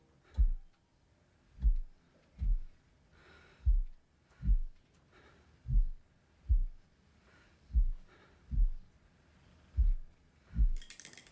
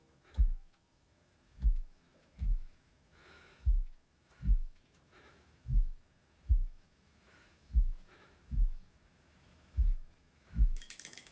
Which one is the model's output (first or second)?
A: second